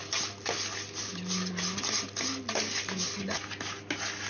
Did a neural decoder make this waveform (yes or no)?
no